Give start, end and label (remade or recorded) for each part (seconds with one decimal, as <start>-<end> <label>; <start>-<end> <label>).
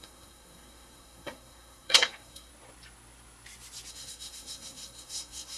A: 0.0-2.5 remade; 2.5-3.9 recorded; 3.9-5.6 remade